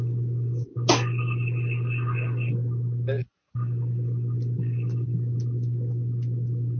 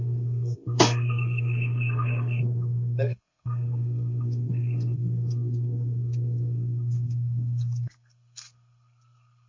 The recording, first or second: first